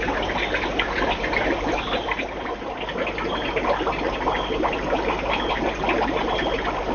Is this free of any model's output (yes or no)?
yes